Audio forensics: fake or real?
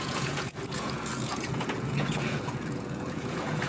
fake